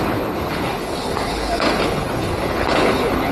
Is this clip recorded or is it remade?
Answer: remade